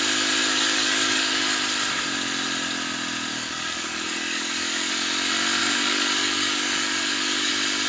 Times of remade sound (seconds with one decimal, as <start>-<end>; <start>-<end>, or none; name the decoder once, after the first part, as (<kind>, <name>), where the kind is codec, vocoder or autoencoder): 0.4-1.4 (codec, DAC); 3.3-4.9; 5.6-7.5

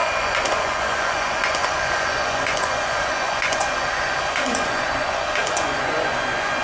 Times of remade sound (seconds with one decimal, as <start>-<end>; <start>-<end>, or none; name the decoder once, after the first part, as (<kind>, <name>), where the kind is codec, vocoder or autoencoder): 0.0-6.6 (vocoder, Vocos)

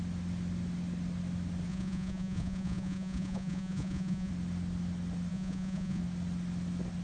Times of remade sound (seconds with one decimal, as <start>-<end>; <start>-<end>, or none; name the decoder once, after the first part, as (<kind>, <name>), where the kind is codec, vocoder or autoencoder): 1.7-4.3 (vocoder, Vocos); 5.3-6.0

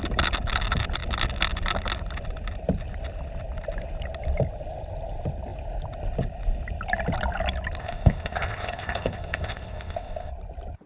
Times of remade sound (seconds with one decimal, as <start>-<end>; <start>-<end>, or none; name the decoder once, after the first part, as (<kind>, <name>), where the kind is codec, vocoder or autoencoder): 7.8-10.3 (codec, ZipCodec)